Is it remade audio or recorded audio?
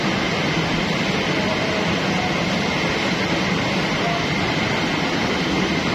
recorded